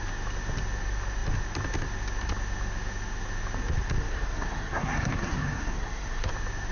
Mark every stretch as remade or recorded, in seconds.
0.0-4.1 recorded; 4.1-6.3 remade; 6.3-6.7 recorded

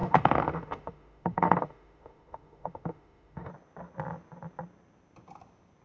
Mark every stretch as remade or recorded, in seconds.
0.0-3.5 remade; 3.5-5.8 recorded